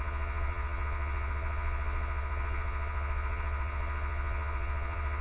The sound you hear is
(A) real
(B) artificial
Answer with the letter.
B